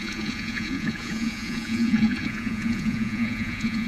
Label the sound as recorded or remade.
remade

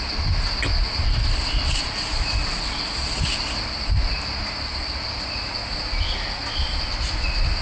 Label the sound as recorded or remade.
recorded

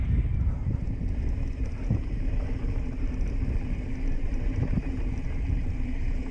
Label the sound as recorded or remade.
remade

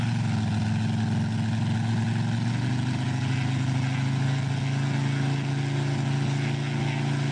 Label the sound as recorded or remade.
recorded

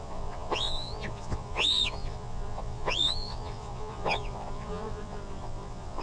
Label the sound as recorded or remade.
remade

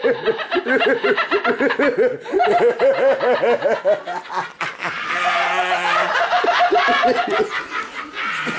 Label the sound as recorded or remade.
recorded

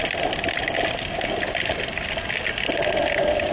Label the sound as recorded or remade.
recorded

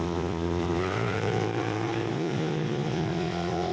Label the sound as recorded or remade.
remade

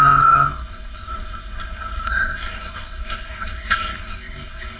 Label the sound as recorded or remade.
remade